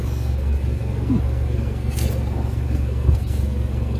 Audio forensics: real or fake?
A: fake